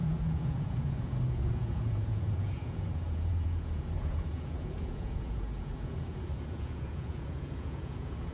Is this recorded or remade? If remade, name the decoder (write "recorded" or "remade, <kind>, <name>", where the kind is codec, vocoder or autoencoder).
remade, vocoder, Vocos